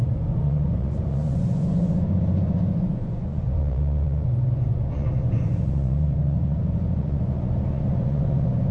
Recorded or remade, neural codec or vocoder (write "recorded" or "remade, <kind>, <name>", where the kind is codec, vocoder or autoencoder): remade, vocoder, Vocos